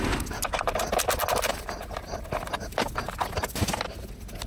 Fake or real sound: real